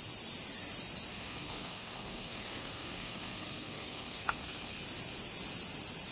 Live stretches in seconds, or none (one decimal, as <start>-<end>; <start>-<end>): 0.0-1.1; 4.8-6.1